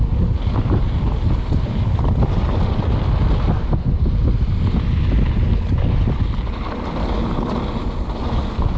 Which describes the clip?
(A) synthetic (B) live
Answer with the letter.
B